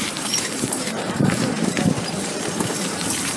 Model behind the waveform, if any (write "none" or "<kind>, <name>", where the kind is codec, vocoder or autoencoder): vocoder, BigVGAN v2